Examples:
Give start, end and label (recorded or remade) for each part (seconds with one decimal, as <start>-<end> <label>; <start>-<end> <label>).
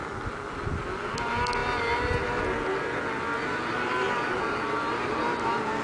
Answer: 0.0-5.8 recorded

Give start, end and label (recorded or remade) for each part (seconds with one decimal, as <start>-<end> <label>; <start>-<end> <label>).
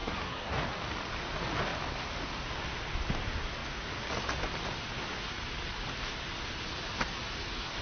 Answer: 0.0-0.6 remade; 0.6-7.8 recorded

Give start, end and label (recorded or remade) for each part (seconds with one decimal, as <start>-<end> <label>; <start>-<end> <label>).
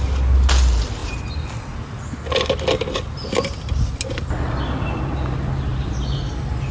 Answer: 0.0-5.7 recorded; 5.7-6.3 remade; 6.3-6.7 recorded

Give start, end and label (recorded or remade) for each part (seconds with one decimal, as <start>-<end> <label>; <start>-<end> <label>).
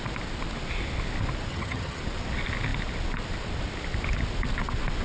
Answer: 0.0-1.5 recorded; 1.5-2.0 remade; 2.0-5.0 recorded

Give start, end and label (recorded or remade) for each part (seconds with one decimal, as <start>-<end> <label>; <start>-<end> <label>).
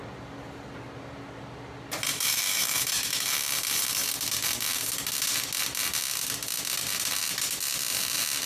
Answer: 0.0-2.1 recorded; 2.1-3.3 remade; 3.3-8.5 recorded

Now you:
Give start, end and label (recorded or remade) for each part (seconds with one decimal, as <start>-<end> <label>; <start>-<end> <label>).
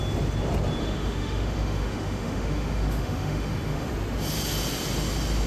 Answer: 0.0-0.8 recorded; 0.8-3.9 remade; 3.9-5.5 recorded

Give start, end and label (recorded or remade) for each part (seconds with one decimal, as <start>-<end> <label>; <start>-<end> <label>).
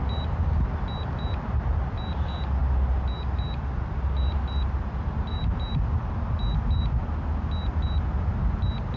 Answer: 0.0-9.0 recorded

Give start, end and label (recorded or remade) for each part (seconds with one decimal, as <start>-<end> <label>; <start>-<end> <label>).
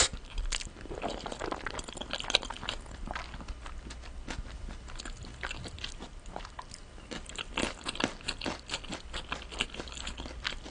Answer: 0.0-10.7 recorded